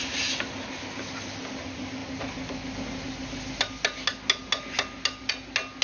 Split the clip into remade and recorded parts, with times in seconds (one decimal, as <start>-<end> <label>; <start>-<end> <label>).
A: 0.0-5.8 recorded